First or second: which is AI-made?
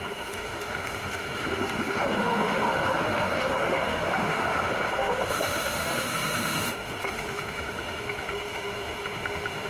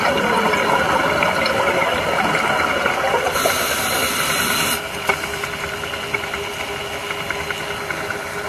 first